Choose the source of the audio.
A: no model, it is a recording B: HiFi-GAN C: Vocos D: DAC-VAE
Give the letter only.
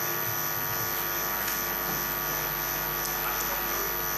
A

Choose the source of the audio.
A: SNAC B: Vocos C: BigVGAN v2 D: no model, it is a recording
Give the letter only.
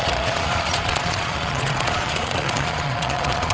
B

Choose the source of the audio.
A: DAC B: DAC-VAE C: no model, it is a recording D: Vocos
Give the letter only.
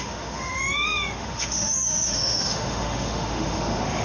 B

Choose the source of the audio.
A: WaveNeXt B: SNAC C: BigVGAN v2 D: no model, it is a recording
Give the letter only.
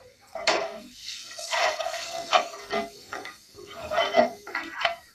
B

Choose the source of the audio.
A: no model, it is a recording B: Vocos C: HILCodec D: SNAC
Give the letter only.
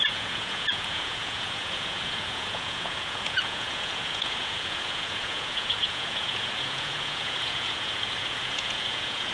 B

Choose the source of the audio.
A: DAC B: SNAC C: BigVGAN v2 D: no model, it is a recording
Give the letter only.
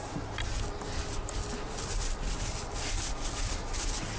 D